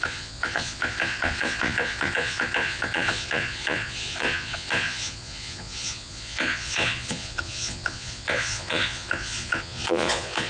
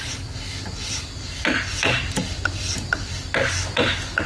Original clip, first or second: second